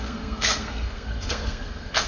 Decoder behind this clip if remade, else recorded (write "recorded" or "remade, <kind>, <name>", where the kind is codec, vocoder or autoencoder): remade, codec, SNAC